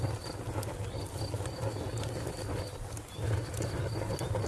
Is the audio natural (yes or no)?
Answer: yes